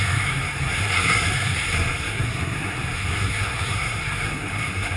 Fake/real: fake